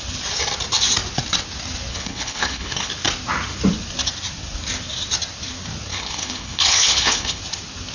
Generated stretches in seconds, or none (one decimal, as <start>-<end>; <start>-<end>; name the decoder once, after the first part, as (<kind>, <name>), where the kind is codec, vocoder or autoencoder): 1.9-2.9 (codec, HILCodec); 5.9-7.4